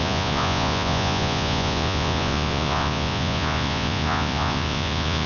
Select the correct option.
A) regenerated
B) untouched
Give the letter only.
A